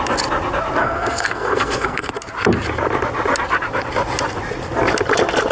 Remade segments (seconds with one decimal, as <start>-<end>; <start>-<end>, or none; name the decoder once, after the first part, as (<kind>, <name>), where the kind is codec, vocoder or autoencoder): 0.8-2.1 (codec, SNAC)